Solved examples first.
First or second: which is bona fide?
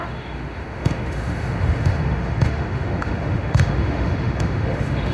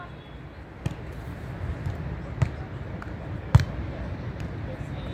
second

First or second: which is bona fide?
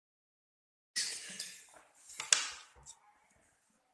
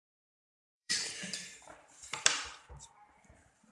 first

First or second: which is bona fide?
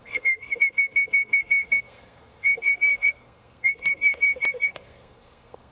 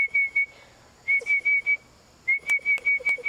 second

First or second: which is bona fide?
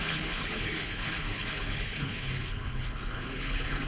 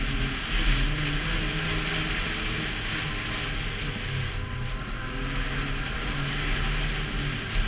second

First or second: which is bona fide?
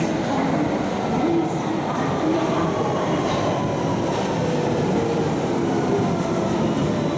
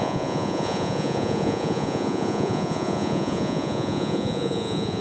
first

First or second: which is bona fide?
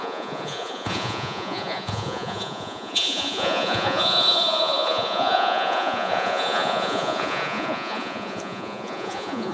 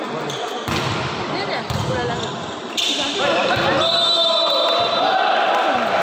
second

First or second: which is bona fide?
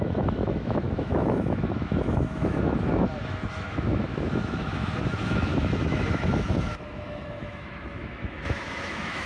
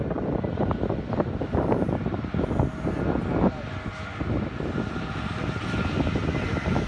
second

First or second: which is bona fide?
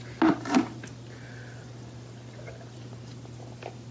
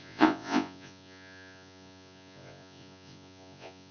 first